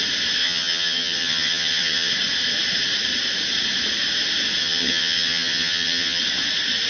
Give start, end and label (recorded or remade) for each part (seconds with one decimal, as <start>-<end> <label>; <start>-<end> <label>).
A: 0.0-0.4 recorded; 0.4-2.1 remade; 2.1-4.6 recorded; 4.6-6.2 remade; 6.2-6.9 recorded